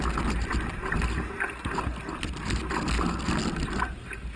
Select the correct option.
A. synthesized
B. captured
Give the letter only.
B